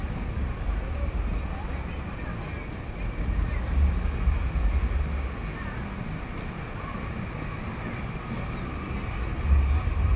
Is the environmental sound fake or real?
real